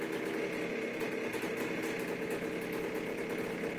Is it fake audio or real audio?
real